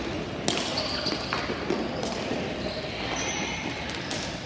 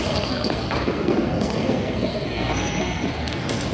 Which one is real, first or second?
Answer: first